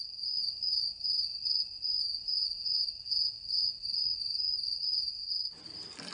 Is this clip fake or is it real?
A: real